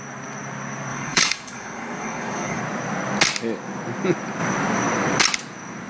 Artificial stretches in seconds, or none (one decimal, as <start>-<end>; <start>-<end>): 0.9-2.6